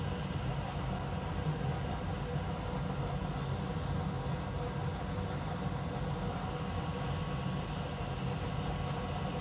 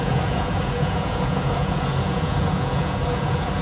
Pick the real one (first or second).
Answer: first